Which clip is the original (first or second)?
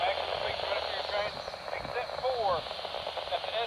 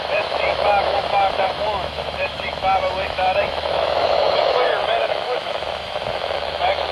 first